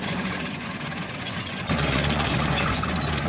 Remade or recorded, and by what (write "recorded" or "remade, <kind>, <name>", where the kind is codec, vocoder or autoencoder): remade, vocoder, Vocos